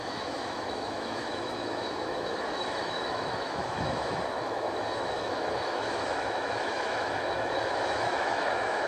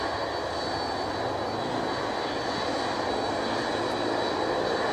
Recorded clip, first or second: second